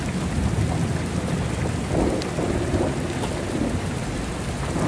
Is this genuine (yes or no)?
yes